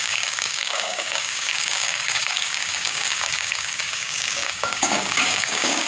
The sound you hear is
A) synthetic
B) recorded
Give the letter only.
A